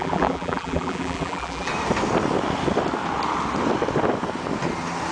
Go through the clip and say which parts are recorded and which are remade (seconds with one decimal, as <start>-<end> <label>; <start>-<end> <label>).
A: 0.0-1.7 remade; 1.7-5.1 recorded